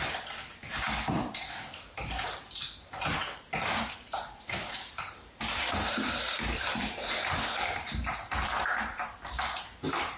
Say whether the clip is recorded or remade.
remade